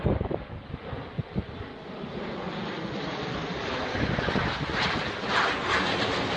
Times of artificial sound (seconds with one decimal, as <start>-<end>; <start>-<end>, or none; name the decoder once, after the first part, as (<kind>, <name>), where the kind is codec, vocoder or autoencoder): none

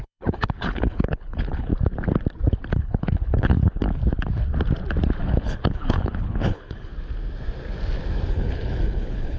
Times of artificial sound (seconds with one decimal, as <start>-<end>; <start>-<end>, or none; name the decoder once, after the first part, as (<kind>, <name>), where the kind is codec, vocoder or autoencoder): 0.0-1.7 (codec, HILCodec); 2.7-4.0; 5.2-6.9; 8.3-9.4

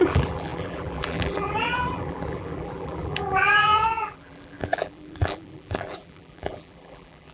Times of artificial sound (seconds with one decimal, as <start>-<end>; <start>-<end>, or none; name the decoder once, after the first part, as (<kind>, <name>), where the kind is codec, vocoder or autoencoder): 0.0-7.3 (vocoder, BigVGAN v2)

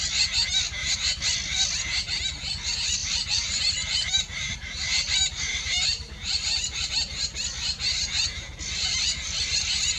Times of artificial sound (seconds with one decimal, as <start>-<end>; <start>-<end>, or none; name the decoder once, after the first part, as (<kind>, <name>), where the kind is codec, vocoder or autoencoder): 3.0-6.9 (vocoder, BigVGAN v2)

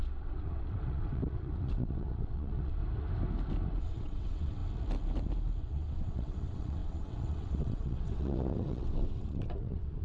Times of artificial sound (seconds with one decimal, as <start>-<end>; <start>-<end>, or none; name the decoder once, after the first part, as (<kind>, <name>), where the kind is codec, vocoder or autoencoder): 0.0-2.8 (vocoder, WaveNeXt); 3.8-4.6; 5.6-10.0

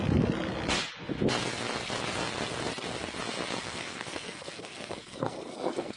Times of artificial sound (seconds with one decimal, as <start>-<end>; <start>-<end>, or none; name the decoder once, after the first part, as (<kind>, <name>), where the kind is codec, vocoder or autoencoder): 3.6-6.0 (codec, SNAC)

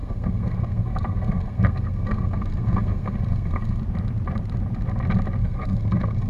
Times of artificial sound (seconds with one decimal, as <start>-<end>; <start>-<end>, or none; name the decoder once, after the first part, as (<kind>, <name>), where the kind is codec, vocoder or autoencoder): 0.0-3.8 (codec, SNAC); 5.4-6.3